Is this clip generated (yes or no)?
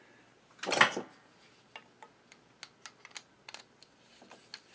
no